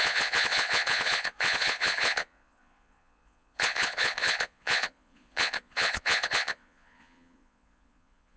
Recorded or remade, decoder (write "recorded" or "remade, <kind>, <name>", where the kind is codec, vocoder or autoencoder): remade, vocoder, Vocos